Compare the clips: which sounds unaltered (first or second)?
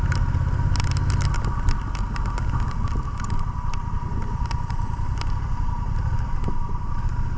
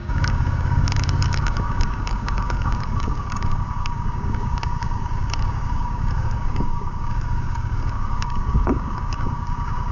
first